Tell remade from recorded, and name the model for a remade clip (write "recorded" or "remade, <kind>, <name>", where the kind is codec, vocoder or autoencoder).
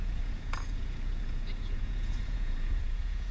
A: remade, vocoder, Vocos